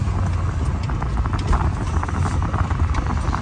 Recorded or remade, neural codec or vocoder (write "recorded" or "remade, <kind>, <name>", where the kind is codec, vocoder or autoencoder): recorded